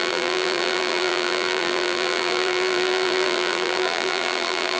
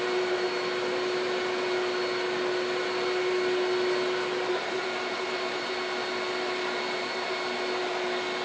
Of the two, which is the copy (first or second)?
first